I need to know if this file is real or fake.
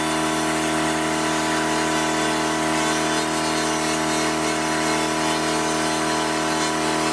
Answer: real